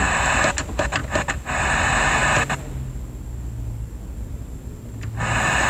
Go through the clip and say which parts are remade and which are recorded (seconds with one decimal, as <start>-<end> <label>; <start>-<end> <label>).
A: 0.0-5.7 recorded